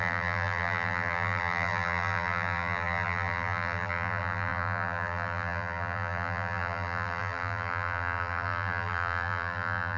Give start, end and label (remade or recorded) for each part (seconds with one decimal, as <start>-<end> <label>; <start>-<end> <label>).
0.0-10.0 remade